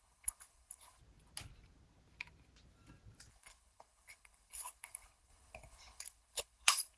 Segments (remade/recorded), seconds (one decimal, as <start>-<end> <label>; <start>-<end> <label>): 0.0-1.0 remade; 1.0-3.3 recorded; 3.3-7.0 remade